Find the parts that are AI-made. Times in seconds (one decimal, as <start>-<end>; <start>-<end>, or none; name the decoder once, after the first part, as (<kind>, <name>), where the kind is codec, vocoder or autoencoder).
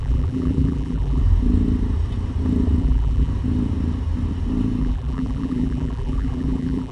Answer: 0.0-1.2 (vocoder, BigVGAN v2); 2.8-3.3; 4.8-6.9